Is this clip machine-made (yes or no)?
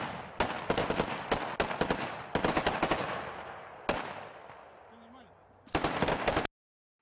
no